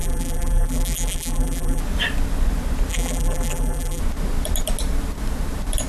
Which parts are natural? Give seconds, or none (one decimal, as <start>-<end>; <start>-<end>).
1.8-2.9; 4.0-5.9